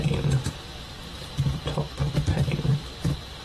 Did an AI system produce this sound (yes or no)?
yes